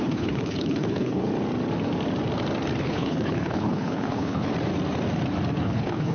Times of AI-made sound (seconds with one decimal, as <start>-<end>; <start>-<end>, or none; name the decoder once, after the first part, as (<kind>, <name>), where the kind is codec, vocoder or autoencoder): 0.0-1.3 (codec, HILCodec); 2.8-4.5; 5.6-6.1